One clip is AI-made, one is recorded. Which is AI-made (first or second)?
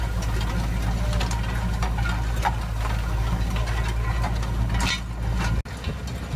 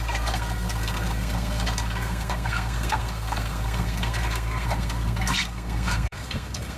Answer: second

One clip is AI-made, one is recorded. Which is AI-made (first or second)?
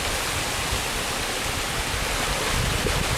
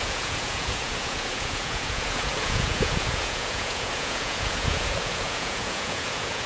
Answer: second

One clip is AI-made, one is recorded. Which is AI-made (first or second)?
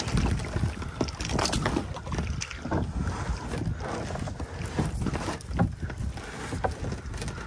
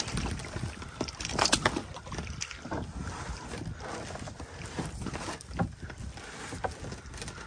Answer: second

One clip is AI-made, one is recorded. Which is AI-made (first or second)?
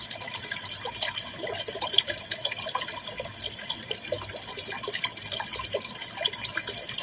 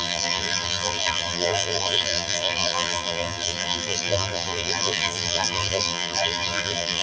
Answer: second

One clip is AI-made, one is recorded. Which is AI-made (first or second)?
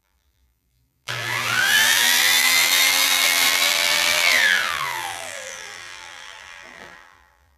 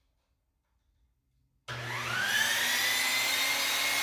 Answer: first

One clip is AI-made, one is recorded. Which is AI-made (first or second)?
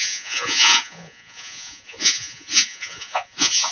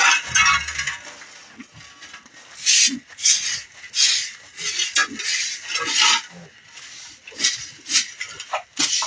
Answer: first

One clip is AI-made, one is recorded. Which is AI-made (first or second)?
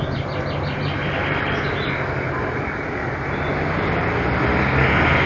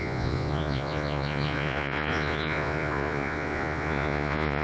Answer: second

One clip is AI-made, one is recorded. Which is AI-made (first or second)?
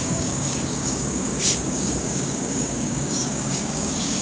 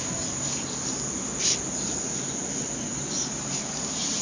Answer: first